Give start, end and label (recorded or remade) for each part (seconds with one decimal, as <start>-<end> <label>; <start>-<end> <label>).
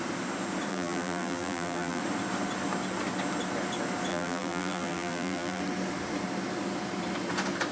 0.0-0.7 recorded; 0.7-2.0 remade; 2.0-4.1 recorded; 4.1-5.6 remade; 5.6-7.7 recorded